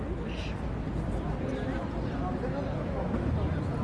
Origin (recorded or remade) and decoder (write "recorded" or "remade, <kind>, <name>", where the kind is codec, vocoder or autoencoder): recorded